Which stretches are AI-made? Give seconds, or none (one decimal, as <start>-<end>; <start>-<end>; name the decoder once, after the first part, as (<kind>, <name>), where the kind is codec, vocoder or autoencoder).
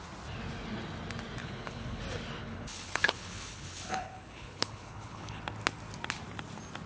1.4-2.0 (codec, HILCodec); 2.4-5.4